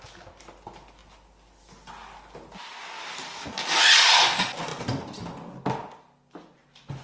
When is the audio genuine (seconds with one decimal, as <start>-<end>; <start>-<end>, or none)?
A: 0.0-7.0